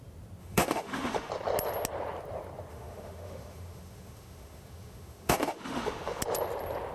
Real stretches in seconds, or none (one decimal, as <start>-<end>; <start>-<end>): 0.0-0.4; 1.3-2.7; 6.2-6.9